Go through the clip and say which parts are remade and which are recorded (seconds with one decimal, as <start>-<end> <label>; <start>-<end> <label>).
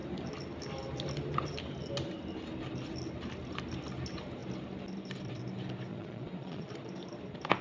0.0-5.9 recorded; 5.9-6.7 remade; 6.7-7.6 recorded